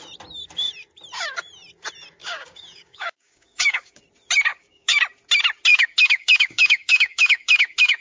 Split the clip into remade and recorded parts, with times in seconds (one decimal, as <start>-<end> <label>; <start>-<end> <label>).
0.0-2.2 recorded; 2.2-4.0 remade; 4.0-4.5 recorded; 4.5-5.0 remade; 5.0-5.7 recorded; 5.7-8.0 remade